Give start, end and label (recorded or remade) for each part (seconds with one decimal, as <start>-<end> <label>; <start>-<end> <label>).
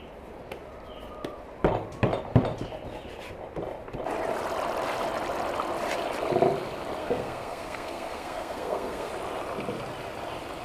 0.0-7.0 recorded; 7.0-9.1 remade; 9.1-10.6 recorded